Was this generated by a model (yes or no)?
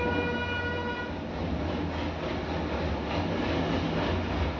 no